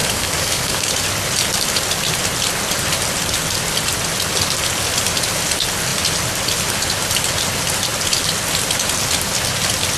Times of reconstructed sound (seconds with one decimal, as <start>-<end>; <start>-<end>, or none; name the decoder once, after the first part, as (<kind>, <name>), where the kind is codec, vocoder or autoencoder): 0.0-0.9 (codec, DAC)